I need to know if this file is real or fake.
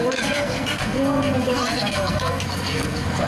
fake